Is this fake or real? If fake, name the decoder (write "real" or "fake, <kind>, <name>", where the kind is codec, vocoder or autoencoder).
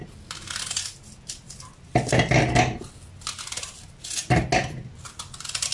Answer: real